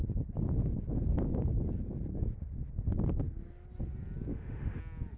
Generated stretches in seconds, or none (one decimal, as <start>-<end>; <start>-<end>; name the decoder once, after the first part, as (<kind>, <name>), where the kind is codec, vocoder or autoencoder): 4.3-4.8 (autoencoder, DAC-VAE)